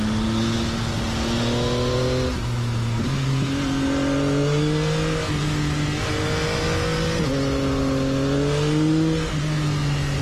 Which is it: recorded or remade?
recorded